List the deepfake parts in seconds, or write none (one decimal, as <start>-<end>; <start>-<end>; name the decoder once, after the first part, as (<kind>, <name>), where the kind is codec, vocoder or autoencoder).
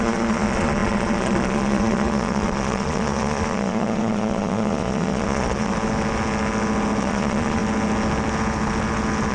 0.0-5.7 (vocoder, Vocos); 7.0-7.6